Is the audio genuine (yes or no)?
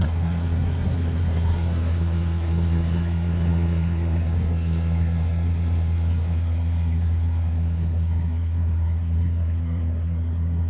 no